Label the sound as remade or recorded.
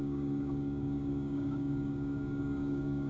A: remade